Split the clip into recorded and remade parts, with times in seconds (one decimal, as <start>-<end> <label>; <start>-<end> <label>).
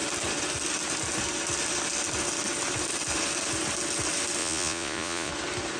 0.0-4.4 recorded; 4.4-5.3 remade; 5.3-5.8 recorded